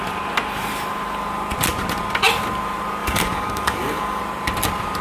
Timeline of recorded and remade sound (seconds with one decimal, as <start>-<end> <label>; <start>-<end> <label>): 0.0-3.0 recorded; 3.0-4.2 remade; 4.2-5.0 recorded

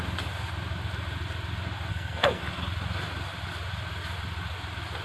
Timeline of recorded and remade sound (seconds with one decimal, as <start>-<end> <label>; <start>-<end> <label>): 0.0-1.9 recorded; 1.9-2.4 remade; 2.4-5.0 recorded

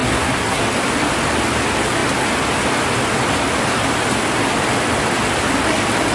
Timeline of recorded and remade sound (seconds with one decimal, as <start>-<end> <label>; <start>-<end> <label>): 0.0-0.6 remade; 0.6-6.1 recorded

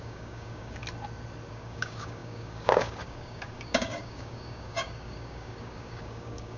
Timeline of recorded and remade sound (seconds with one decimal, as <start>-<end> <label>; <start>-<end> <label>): 0.0-0.8 remade; 0.8-1.5 recorded; 1.5-6.6 remade

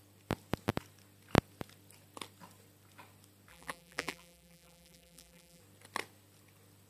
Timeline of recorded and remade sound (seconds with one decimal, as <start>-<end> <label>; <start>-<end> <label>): 0.0-3.5 recorded; 3.5-5.6 remade; 5.6-6.9 recorded